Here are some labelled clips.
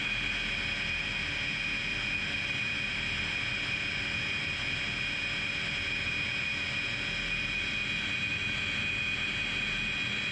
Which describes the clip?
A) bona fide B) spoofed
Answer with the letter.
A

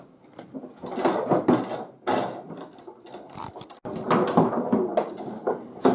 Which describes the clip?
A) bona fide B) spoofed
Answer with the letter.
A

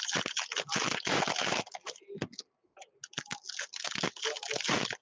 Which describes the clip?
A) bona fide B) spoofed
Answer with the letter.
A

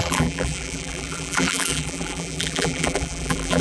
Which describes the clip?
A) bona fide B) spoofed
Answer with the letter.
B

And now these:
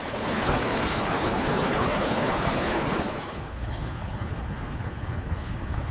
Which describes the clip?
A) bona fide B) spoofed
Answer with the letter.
B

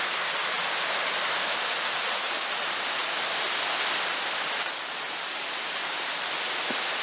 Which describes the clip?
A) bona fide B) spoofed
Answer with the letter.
A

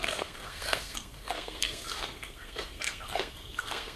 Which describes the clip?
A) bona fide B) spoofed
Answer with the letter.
B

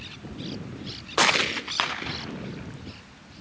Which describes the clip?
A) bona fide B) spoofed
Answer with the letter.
A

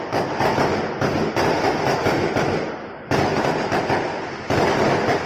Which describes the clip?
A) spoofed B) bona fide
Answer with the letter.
B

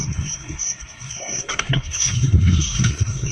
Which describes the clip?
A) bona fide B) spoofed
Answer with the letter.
B